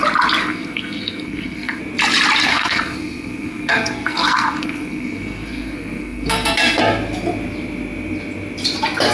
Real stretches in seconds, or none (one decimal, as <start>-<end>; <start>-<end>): 0.0-0.4; 1.8-2.5; 6.8-9.1